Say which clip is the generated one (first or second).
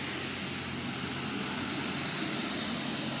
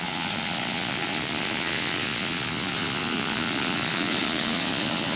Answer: second